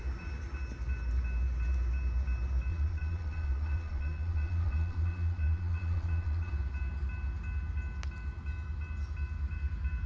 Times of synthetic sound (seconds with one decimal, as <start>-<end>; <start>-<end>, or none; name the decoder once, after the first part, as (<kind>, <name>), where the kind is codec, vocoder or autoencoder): 2.7-6.5 (vocoder, Vocos)